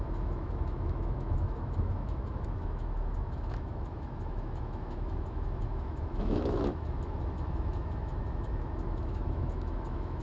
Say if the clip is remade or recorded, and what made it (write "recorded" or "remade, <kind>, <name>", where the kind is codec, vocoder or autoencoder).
remade, autoencoder, DAC-VAE